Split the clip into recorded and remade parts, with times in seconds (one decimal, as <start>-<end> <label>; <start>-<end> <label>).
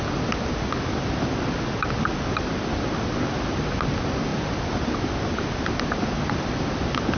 0.0-7.2 recorded